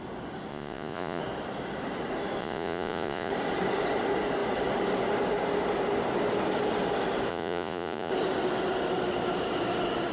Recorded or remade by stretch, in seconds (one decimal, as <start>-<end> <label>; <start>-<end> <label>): 0.0-0.5 recorded; 0.5-1.2 remade; 1.2-2.4 recorded; 2.4-3.3 remade; 3.3-7.3 recorded; 7.3-8.1 remade; 8.1-10.1 recorded